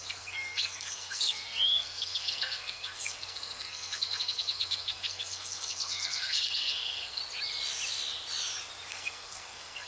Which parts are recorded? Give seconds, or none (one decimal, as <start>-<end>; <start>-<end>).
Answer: 7.2-8.9